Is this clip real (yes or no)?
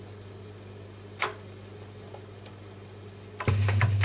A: yes